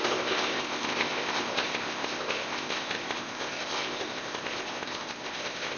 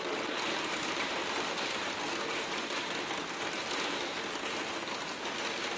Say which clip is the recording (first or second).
second